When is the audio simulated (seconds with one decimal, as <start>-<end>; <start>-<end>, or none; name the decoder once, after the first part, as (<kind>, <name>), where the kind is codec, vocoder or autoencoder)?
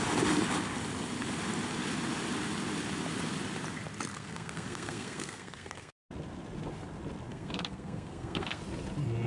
4.1-6.0 (codec, SNAC); 7.3-8.6